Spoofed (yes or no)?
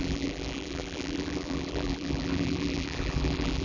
yes